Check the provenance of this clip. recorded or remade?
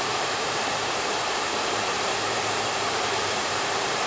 remade